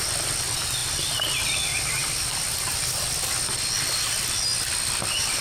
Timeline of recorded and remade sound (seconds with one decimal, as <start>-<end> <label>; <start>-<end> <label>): 0.0-5.4 recorded